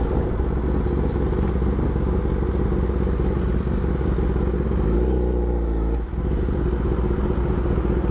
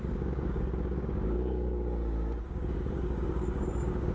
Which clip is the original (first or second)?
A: first